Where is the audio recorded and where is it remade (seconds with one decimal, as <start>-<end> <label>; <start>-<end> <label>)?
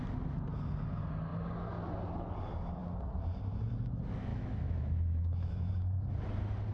0.0-4.3 recorded; 4.3-5.7 remade; 5.7-6.7 recorded